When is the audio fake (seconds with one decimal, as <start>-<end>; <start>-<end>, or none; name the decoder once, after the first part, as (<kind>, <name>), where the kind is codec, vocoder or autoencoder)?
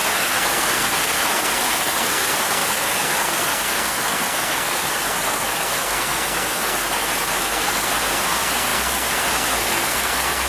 0.0-10.5 (codec, SNAC)